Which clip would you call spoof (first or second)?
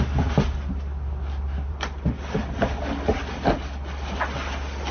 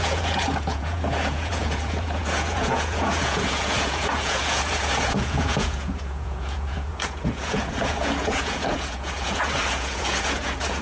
second